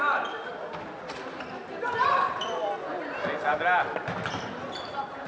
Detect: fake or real real